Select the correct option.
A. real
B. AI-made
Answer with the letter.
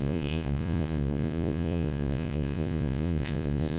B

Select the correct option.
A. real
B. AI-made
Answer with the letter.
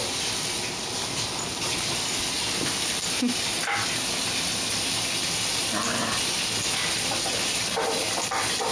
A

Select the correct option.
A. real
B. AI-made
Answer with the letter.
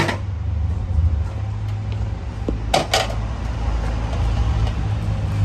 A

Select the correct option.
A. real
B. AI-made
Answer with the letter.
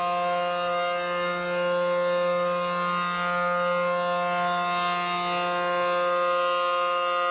A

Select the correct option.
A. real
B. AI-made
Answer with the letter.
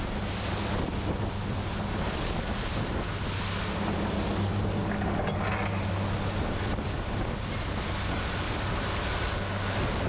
A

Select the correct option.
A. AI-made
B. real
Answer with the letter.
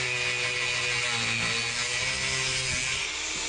B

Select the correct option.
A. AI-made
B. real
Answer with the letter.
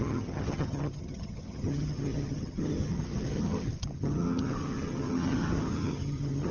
A